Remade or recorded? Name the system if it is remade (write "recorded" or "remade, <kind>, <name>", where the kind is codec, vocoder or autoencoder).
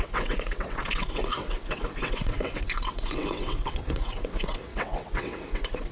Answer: remade, vocoder, WaveNeXt